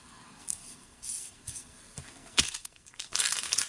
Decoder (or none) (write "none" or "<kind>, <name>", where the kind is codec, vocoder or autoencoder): codec, SNAC